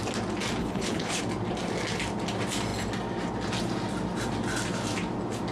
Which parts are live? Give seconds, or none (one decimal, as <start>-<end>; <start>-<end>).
0.0-0.6; 1.2-5.5